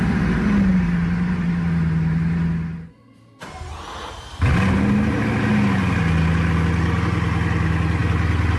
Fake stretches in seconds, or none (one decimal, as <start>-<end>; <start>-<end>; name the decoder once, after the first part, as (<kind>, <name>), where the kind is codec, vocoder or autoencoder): none